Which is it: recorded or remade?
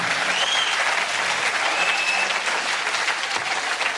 recorded